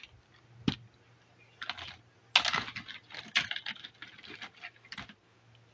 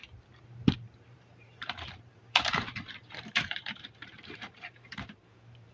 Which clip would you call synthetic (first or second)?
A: second